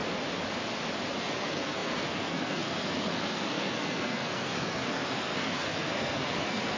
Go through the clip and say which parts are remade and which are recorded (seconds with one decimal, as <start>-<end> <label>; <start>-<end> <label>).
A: 0.0-1.2 recorded; 1.2-6.8 remade